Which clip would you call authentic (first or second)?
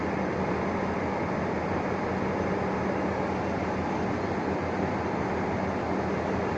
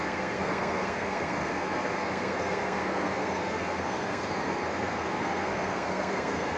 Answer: first